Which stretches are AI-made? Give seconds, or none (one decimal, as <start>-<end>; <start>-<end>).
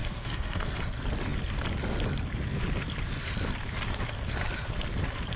0.0-0.8